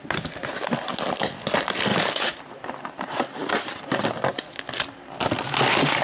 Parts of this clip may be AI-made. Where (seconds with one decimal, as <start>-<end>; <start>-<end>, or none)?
1.9-4.0